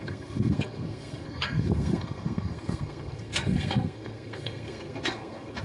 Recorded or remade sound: remade